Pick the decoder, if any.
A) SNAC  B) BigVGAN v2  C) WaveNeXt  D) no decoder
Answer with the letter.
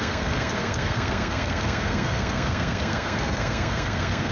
A